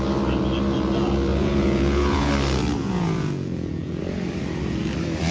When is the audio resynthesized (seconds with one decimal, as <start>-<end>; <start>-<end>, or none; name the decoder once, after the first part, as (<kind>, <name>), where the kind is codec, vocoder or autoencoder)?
1.3-2.3 (vocoder, Vocos); 2.8-4.0